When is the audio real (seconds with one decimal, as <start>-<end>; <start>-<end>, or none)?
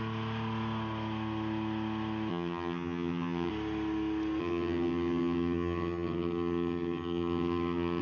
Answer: 0.0-2.3; 3.5-4.4